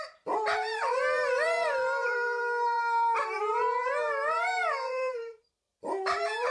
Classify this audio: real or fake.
fake